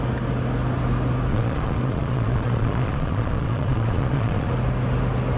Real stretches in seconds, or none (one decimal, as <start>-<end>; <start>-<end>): 0.0-1.3; 4.5-5.4